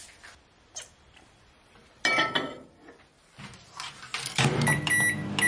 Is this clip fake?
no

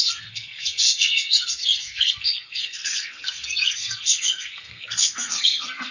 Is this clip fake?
yes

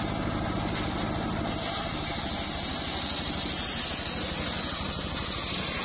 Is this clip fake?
no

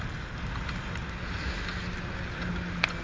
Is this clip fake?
no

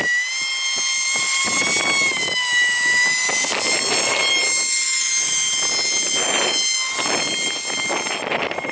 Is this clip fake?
no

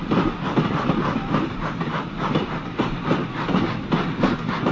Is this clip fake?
no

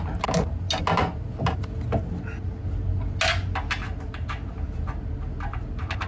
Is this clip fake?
no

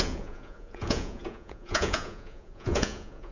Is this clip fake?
yes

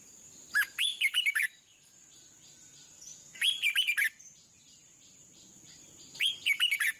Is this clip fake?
yes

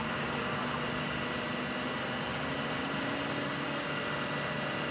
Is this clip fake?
no